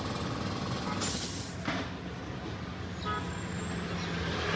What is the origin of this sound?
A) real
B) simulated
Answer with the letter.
A